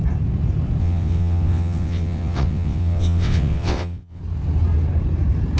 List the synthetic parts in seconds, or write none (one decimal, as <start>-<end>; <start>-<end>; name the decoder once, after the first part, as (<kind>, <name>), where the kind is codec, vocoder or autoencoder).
0.8-4.2 (vocoder, WaveNeXt)